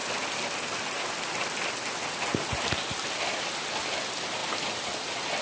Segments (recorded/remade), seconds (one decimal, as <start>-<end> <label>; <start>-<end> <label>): 0.0-5.4 recorded